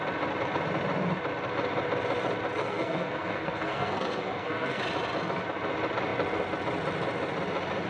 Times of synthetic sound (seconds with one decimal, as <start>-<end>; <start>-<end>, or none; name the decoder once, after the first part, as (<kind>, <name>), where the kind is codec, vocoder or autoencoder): 2.6-4.8 (codec, SNAC)